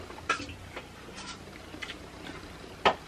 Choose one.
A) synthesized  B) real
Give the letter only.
B